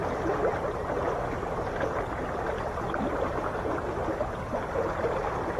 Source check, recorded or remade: recorded